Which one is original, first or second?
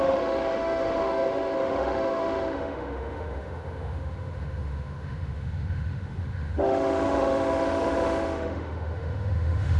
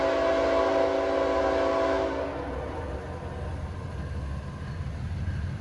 second